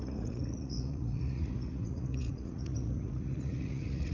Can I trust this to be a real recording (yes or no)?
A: no